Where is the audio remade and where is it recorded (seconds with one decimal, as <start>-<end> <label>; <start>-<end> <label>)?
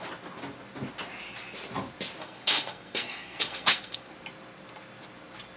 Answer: 0.0-2.2 recorded; 2.2-4.1 remade; 4.1-5.6 recorded